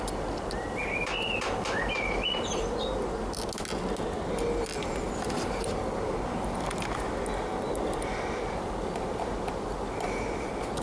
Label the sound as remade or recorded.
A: recorded